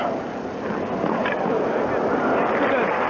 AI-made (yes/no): no